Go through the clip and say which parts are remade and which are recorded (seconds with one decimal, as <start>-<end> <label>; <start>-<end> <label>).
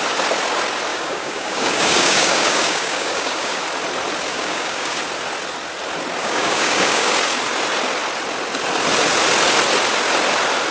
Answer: 0.0-0.9 recorded; 0.9-3.6 remade; 3.6-4.3 recorded; 4.3-5.0 remade; 5.0-6.2 recorded; 6.2-7.1 remade; 7.1-10.7 recorded